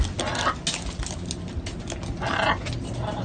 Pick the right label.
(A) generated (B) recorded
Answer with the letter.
B